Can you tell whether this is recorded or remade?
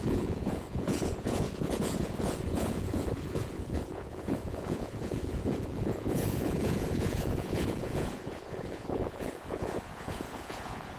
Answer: remade